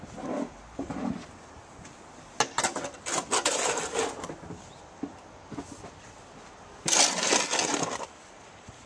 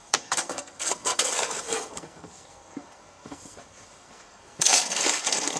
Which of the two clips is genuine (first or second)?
first